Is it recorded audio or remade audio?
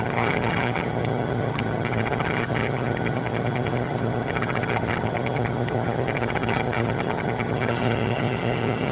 remade